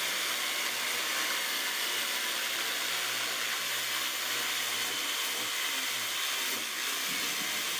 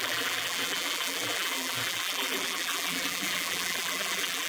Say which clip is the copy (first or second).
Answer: second